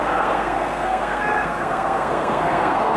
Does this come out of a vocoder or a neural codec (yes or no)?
yes